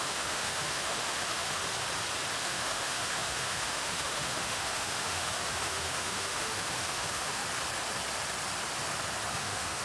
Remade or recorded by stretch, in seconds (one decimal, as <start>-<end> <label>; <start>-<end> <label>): 0.0-1.6 remade; 1.6-2.4 recorded; 2.4-7.4 remade; 7.4-9.3 recorded; 9.3-9.8 remade